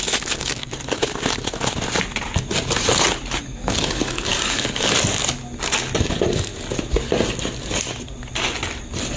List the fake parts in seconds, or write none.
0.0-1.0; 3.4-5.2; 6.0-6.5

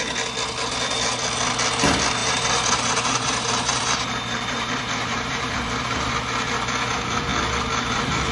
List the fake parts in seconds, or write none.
2.2-6.1

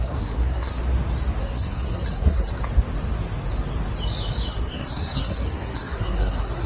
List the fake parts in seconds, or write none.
0.0-0.8; 1.4-2.5; 4.5-6.7

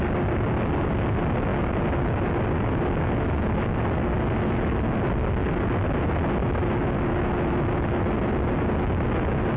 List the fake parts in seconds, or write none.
none

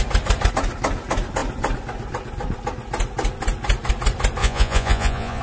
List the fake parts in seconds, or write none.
4.4-5.4

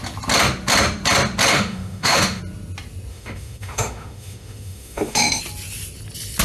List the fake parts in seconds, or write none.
1.5-2.4; 3.1-5.4

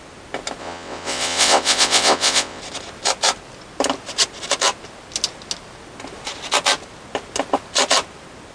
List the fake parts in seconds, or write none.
0.6-2.6